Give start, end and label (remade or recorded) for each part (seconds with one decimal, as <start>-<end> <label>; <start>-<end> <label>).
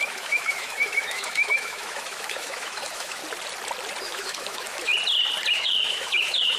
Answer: 0.0-3.2 remade; 3.2-4.0 recorded; 4.0-4.9 remade; 4.9-5.5 recorded; 5.5-6.6 remade